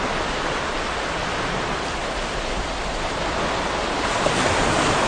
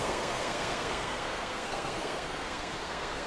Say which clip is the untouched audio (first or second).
first